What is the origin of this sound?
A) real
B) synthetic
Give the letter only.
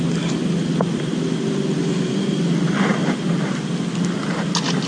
A